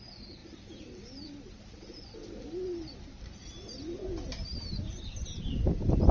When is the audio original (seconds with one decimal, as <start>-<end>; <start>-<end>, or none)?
0.0-2.2